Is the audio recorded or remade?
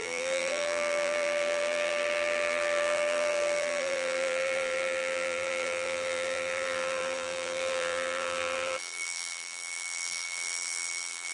remade